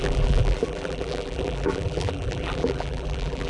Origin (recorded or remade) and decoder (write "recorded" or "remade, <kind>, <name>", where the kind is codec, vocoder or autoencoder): remade, vocoder, BigVGAN v2